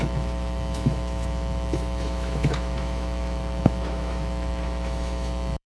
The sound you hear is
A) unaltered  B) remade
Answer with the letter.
B